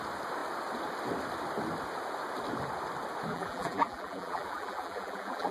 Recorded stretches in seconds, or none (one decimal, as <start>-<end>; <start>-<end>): 0.0-3.3